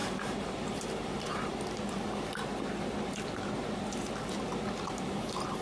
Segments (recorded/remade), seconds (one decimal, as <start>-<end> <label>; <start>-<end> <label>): 0.0-1.5 remade; 1.5-4.9 recorded; 4.9-5.6 remade